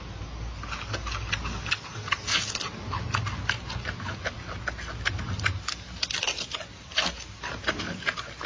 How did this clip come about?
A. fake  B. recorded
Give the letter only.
B